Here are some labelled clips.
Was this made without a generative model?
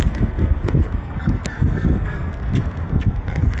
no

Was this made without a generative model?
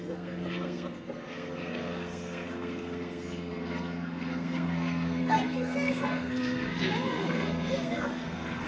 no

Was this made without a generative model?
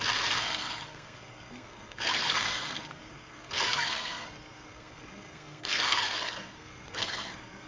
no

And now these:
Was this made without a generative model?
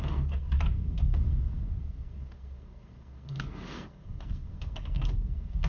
no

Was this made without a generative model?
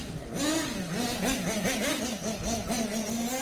yes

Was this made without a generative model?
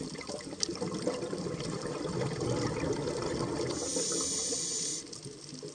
yes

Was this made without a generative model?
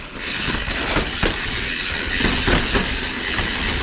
yes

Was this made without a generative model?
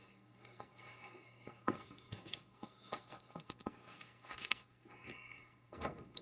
no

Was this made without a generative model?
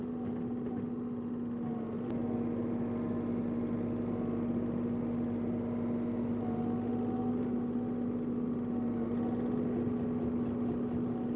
yes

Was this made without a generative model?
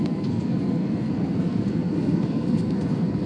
no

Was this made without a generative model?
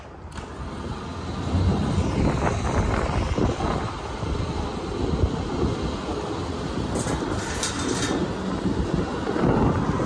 yes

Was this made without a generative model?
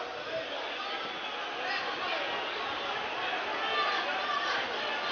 yes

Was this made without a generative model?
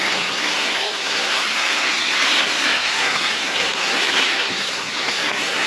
no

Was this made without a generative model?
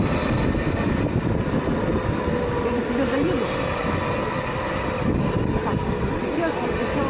yes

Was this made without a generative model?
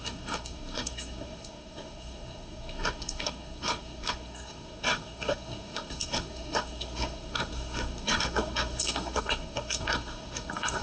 no